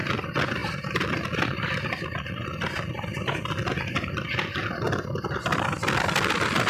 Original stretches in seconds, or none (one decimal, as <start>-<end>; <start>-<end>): 0.0-6.7